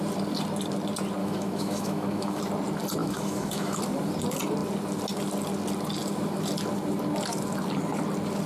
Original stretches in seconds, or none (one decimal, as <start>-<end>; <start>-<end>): 0.0-1.2; 2.4-3.0; 3.8-8.5